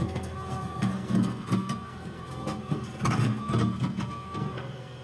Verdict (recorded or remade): remade